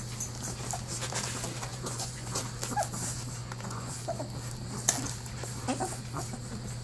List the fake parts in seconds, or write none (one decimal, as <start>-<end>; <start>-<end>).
1.7-2.4; 3.4-3.9